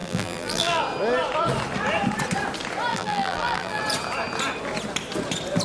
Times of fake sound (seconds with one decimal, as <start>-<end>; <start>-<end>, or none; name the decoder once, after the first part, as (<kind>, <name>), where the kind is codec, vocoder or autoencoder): 0.0-0.8 (vocoder, BigVGAN v2); 2.9-3.8